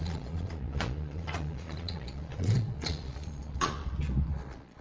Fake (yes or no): yes